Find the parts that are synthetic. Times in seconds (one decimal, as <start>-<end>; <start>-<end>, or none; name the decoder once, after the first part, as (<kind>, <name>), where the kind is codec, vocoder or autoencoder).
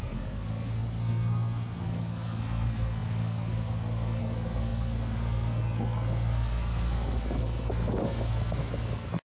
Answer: 0.0-9.2 (codec, SNAC)